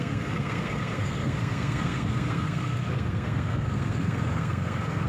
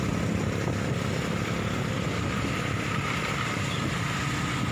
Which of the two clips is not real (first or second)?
first